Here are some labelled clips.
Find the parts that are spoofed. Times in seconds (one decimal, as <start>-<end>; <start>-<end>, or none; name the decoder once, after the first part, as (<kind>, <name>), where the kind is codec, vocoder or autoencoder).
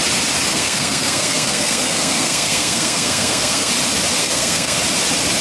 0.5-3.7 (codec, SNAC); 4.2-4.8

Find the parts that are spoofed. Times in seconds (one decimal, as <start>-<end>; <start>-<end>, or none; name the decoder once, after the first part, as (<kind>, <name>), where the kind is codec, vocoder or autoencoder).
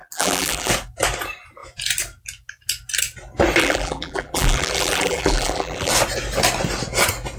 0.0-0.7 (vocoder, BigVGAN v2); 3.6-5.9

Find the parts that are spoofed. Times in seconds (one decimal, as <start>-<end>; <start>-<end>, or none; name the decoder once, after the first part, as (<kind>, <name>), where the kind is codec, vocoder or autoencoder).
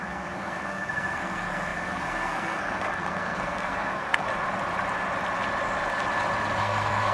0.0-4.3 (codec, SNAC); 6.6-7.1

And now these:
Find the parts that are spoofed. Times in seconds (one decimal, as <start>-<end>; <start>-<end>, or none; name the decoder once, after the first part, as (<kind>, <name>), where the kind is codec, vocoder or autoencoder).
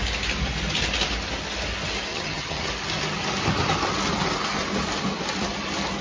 2.1-2.7 (vocoder, HiFi-GAN)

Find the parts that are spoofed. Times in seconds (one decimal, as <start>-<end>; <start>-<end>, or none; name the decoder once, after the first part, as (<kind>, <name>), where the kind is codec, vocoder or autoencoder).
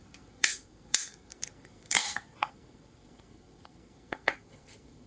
0.0-5.1 (codec, SNAC)